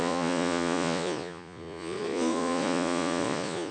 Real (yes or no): no